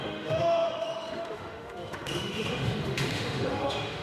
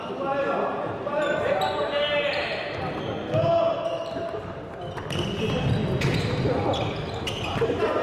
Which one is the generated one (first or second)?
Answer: first